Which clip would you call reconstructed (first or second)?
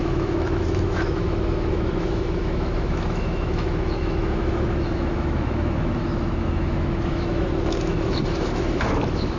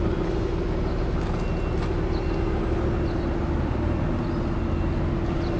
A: first